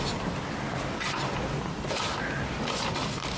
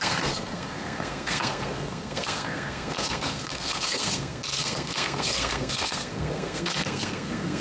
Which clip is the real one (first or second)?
first